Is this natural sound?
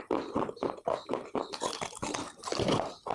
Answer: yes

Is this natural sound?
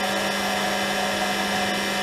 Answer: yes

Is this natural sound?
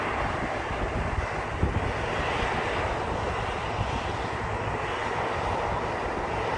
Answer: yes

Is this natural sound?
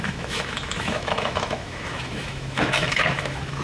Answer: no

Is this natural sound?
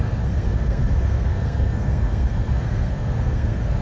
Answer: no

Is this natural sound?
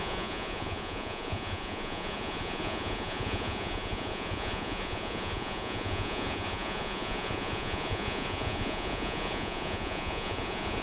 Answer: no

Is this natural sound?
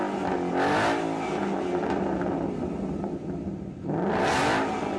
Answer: yes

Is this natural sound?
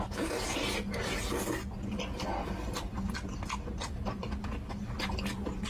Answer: yes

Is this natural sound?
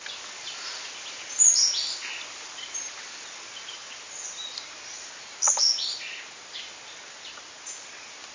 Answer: yes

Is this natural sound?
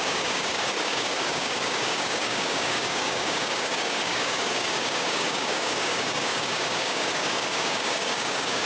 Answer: no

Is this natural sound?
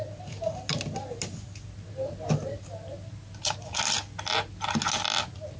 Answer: yes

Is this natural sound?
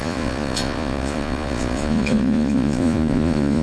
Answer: no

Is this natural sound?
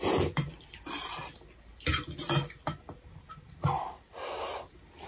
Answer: yes